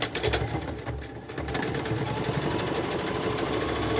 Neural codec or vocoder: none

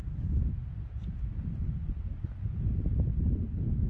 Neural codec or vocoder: none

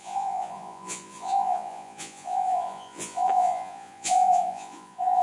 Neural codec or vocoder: vocoder, Vocos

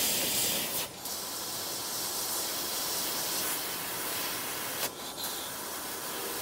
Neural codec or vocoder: none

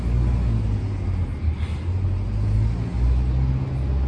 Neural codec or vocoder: none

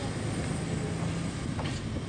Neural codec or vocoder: none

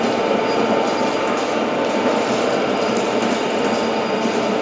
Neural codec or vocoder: none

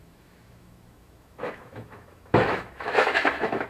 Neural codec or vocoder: autoencoder, DAC-VAE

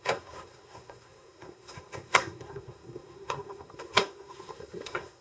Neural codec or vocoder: codec, SNAC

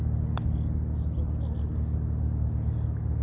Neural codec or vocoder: none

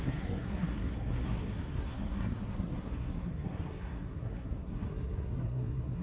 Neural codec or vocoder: codec, SNAC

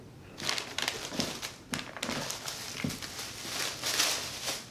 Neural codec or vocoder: none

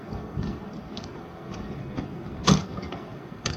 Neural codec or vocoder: codec, SNAC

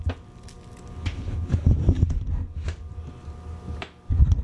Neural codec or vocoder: none